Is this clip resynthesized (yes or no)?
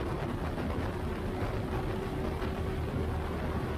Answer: no